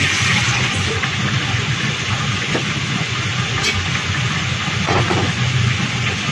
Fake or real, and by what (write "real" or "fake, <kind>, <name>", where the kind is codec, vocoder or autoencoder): fake, vocoder, Vocos